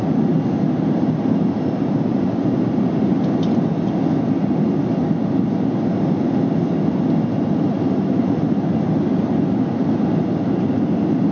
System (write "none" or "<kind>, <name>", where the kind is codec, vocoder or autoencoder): none